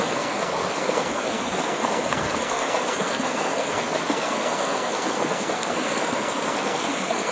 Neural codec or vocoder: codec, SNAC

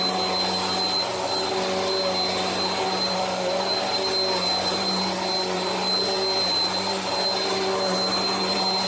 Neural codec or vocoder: none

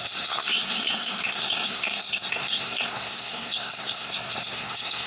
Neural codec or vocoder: codec, SNAC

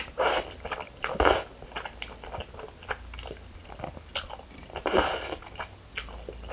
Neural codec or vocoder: none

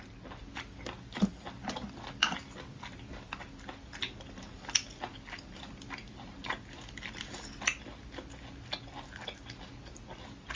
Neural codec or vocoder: none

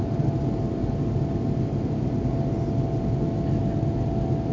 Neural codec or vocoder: none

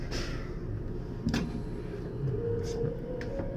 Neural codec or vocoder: none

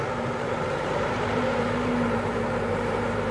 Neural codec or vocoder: vocoder, BigVGAN v2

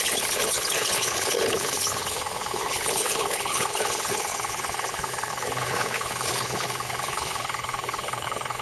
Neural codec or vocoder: codec, HILCodec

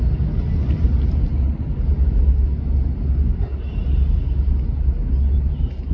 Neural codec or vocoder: none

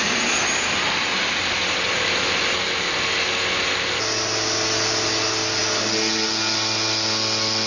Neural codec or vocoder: none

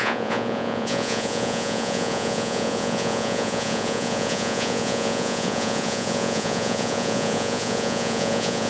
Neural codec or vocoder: vocoder, Vocos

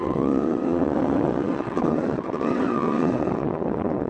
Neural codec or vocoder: vocoder, WaveNeXt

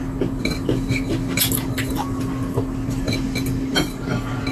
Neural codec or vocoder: none